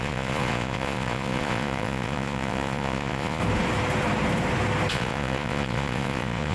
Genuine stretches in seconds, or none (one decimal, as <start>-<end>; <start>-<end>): 3.4-4.9